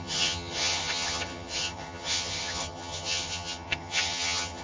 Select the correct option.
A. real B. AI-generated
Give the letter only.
B